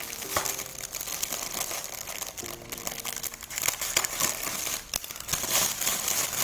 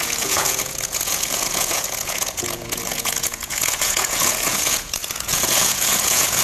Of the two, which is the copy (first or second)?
second